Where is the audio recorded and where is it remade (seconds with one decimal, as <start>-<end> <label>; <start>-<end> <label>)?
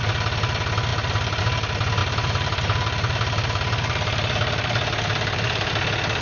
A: 0.0-0.9 recorded; 0.9-1.4 remade; 1.4-2.0 recorded; 2.0-5.7 remade; 5.7-6.2 recorded